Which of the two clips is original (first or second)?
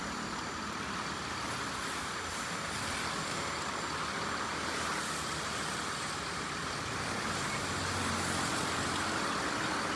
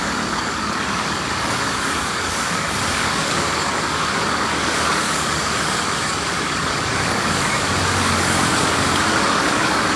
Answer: first